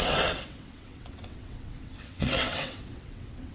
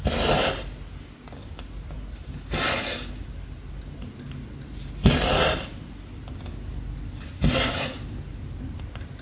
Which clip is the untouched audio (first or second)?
second